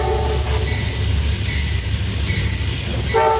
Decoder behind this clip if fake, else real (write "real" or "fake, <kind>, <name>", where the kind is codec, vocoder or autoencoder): real